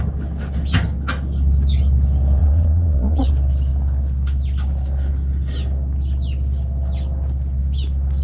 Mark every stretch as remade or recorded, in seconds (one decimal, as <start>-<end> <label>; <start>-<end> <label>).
0.0-2.4 recorded; 2.4-3.3 remade; 3.3-8.2 recorded